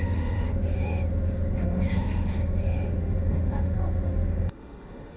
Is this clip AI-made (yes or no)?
yes